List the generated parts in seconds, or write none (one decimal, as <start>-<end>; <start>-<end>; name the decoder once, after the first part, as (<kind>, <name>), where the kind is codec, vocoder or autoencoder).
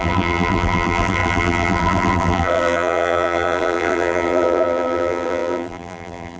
0.0-6.4 (vocoder, BigVGAN v2)